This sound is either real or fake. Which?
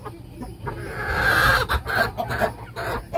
real